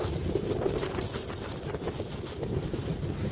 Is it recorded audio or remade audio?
recorded